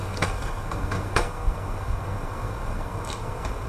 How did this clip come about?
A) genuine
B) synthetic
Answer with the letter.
B